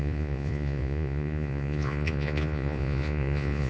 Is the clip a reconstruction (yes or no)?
yes